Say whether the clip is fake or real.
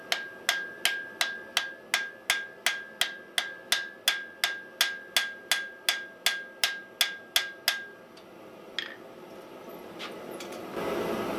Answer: real